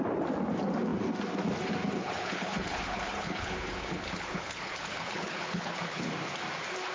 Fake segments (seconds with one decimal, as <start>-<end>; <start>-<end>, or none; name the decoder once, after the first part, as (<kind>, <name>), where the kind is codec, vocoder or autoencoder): 2.0-6.1 (codec, HILCodec)